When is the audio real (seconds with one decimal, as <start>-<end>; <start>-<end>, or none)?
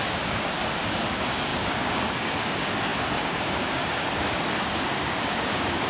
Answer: none